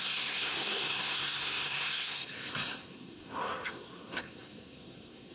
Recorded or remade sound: remade